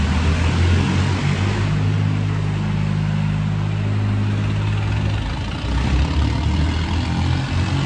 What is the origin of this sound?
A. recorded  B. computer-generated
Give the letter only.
A